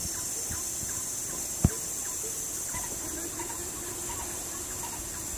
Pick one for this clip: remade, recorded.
recorded